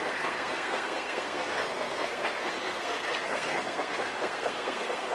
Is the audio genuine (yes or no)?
no